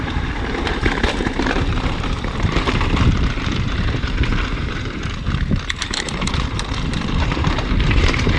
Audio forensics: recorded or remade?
remade